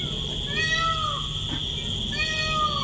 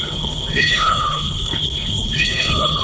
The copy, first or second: second